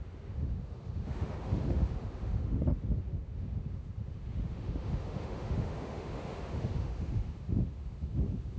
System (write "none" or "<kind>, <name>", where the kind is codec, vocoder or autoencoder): autoencoder, DAC-VAE